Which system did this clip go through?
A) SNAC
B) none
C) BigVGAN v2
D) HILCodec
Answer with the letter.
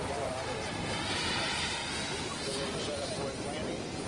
B